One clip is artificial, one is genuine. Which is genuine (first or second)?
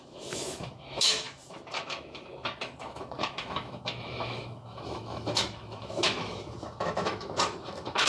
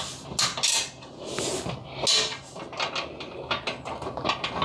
second